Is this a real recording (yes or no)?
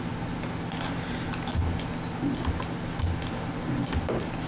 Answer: yes